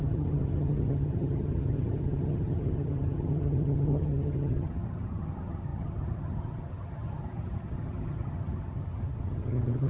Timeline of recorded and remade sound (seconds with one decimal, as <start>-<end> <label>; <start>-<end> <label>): 0.0-9.9 remade